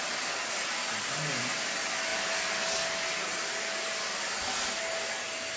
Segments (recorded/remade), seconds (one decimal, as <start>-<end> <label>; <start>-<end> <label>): 0.0-5.6 recorded